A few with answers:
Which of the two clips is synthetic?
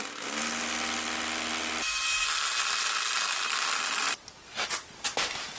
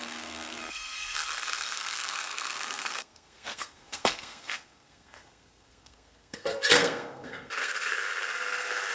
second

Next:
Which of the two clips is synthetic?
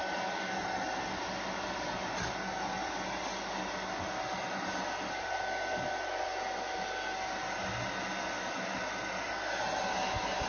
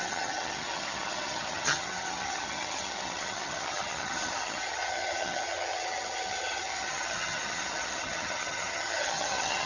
second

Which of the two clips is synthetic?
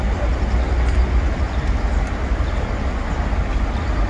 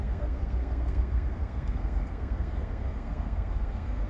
second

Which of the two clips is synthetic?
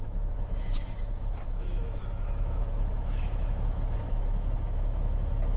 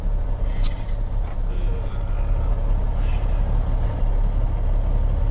first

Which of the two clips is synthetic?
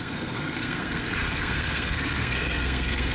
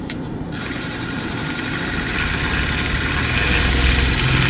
first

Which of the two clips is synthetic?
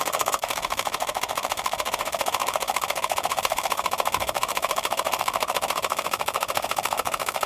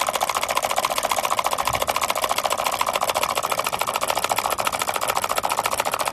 first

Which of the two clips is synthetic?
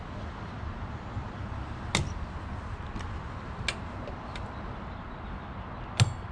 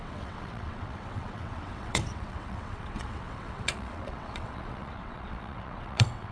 second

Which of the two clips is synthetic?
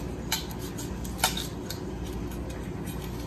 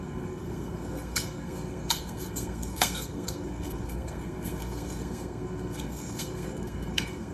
second